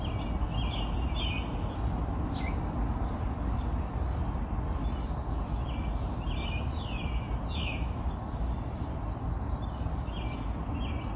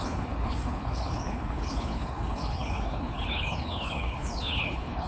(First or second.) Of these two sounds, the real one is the first